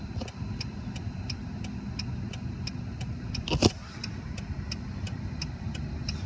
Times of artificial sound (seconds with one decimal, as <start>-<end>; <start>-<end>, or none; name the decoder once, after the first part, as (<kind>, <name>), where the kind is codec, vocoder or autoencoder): none